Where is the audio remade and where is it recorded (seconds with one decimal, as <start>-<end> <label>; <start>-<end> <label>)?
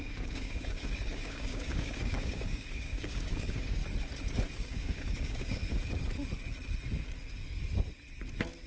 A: 0.0-3.8 remade; 3.8-4.5 recorded; 4.5-5.6 remade; 5.6-8.7 recorded